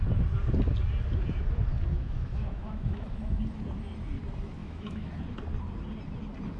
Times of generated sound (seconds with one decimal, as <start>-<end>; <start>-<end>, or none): 1.9-3.4; 4.6-5.1